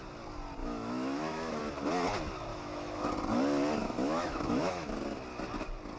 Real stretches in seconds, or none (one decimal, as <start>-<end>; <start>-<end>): 0.0-0.6; 1.6-2.5; 3.1-3.8; 4.9-6.0